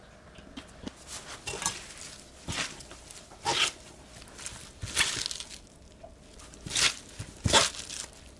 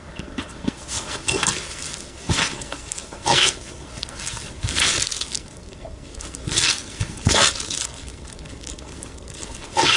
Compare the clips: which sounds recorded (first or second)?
first